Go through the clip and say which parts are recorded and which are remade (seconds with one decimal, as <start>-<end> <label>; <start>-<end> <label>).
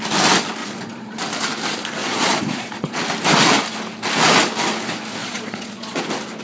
0.0-0.6 recorded; 0.6-1.2 remade; 1.2-2.0 recorded; 2.0-3.0 remade; 3.0-5.2 recorded; 5.2-6.0 remade; 6.0-6.4 recorded